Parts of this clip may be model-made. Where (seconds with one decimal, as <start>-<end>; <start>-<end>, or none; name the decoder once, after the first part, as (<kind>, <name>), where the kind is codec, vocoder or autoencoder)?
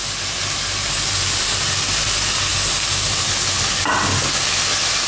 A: none